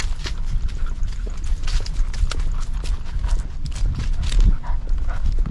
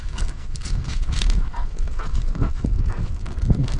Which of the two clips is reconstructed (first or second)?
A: second